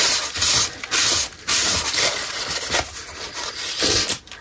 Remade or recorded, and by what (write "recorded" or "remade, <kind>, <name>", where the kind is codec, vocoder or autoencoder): recorded